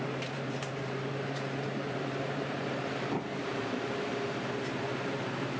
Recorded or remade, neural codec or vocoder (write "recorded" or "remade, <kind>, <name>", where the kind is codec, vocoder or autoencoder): remade, vocoder, BigVGAN v2